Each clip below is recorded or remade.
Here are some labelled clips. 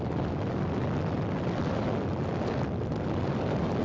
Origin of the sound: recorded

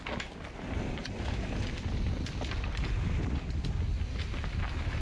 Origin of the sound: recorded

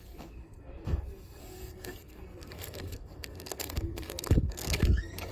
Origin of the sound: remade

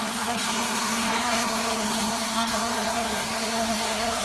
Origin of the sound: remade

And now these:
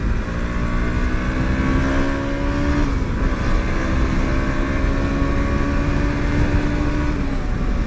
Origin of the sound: recorded